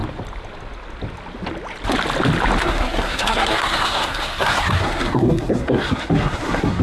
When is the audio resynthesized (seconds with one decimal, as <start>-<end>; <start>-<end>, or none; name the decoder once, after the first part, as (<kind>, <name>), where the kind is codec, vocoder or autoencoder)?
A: 2.6-6.8 (codec, SNAC)